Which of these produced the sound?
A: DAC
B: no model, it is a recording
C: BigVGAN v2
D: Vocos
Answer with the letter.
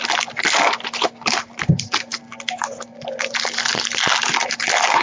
B